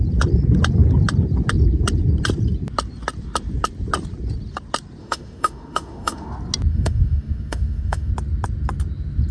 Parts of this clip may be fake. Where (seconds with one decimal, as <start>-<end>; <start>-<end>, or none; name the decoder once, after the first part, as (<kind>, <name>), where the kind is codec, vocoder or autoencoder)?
5.0-6.3 (autoencoder, DAC-VAE); 6.7-8.1